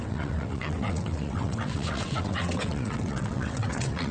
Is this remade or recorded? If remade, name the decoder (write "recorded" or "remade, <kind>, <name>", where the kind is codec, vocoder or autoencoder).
remade, vocoder, WaveNeXt